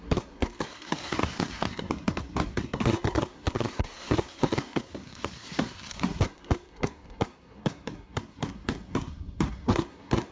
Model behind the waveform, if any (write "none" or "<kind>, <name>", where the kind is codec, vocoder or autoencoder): codec, SNAC